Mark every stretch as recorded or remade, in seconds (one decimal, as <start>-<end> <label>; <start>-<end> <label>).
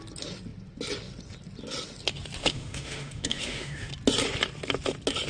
0.0-2.4 recorded; 2.4-3.9 remade; 3.9-5.3 recorded